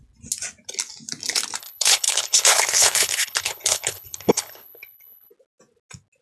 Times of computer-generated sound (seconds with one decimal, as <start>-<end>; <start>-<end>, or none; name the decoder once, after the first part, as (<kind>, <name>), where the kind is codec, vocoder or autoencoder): 1.6-5.3 (codec, HILCodec)